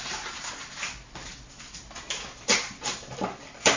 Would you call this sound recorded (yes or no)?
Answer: yes